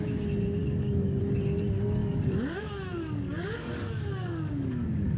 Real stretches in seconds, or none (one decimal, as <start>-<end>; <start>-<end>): 0.0-0.6; 1.2-2.0